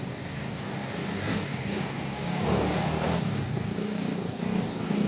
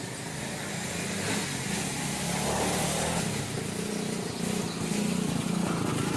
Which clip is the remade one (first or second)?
first